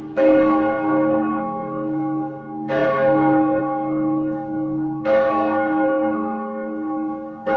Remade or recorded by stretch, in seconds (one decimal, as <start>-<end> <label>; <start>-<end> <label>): 0.0-7.6 remade